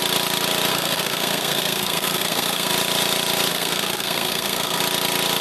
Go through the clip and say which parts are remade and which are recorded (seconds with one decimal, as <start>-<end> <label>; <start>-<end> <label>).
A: 0.0-0.7 recorded; 0.7-2.7 remade; 2.7-3.5 recorded; 3.5-4.8 remade; 4.8-5.4 recorded